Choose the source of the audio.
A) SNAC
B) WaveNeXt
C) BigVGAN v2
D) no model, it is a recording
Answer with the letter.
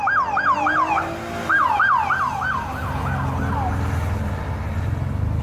D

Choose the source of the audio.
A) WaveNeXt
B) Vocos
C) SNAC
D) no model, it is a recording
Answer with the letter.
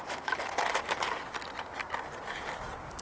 D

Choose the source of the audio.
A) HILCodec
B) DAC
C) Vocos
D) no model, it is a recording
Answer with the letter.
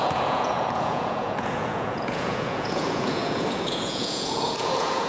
C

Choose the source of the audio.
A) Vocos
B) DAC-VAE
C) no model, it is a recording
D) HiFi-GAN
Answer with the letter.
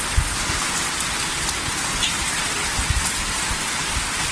C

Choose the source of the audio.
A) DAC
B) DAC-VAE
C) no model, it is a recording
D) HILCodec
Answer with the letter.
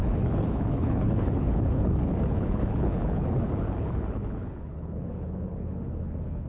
D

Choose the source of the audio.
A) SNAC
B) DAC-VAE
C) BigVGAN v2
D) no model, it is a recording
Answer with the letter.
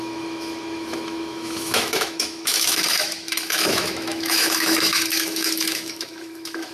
B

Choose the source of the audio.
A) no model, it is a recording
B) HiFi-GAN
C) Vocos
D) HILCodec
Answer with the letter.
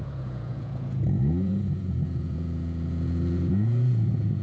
C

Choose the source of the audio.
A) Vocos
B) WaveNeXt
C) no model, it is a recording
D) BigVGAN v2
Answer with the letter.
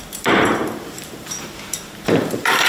D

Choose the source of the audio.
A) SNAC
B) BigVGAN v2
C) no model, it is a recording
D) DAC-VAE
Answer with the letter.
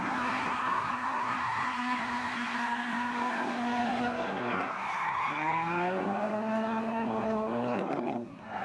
A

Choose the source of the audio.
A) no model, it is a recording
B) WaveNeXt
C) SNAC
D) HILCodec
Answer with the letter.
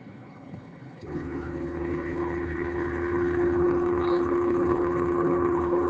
D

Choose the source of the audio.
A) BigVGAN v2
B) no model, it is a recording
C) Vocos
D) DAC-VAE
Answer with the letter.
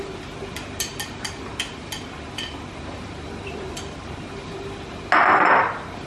B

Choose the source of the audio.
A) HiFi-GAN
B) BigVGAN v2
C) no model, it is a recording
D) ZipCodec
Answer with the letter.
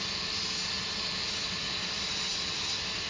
C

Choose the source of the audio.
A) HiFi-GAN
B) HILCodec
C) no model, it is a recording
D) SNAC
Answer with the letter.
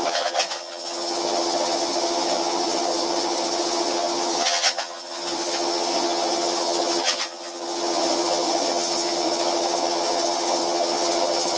A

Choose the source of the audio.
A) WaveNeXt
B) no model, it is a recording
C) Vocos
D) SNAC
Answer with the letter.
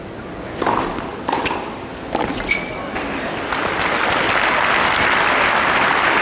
B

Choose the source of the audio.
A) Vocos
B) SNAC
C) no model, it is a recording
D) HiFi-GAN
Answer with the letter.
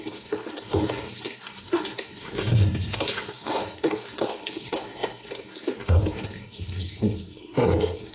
B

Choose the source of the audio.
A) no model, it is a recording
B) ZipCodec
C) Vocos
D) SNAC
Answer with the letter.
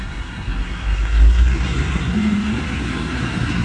D